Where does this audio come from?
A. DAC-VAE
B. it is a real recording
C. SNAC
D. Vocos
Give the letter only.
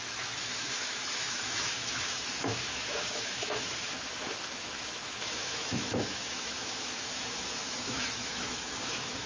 A